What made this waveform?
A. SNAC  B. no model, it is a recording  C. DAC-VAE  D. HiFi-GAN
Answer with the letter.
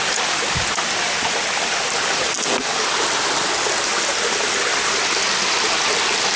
B